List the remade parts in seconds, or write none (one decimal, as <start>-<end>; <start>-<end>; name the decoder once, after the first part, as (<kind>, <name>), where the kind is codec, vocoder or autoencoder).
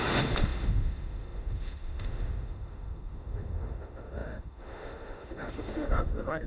0.0-6.5 (autoencoder, DAC-VAE)